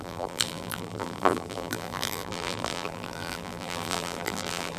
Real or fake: fake